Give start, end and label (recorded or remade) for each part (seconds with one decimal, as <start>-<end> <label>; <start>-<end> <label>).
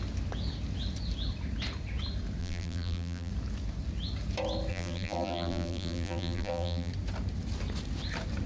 0.0-2.4 recorded; 2.4-3.3 remade; 3.3-4.7 recorded; 4.7-6.9 remade; 6.9-8.5 recorded